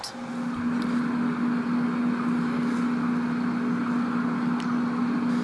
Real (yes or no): yes